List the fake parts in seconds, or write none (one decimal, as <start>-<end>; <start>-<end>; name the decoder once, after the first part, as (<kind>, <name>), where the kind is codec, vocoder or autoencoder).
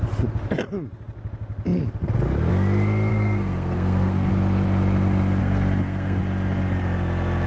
3.1-4.3 (codec, SNAC); 5.4-6.2